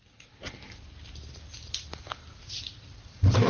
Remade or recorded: recorded